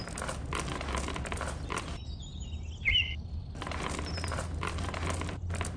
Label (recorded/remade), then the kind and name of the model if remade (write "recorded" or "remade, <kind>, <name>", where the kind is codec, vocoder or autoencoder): recorded